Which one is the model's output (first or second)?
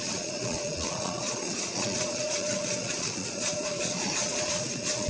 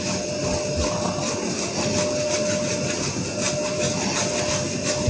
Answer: first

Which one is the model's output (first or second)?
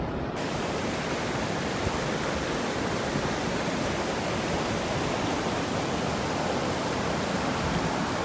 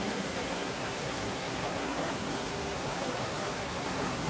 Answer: second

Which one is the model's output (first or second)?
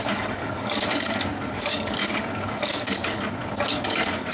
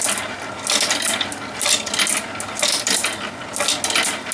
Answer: first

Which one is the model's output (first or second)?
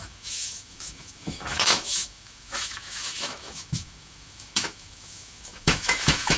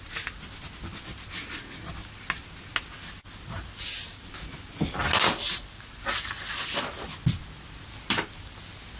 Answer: first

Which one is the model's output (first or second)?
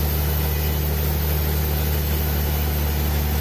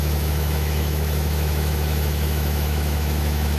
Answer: second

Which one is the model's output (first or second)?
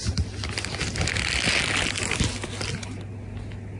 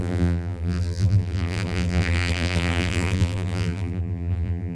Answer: second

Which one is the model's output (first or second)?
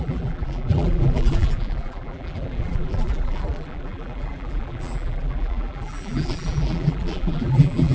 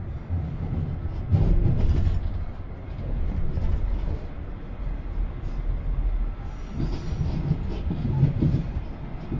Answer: first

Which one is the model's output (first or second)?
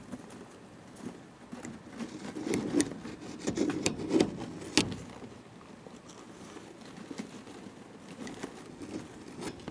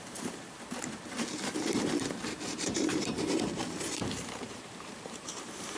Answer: second